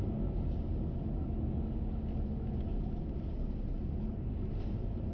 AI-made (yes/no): no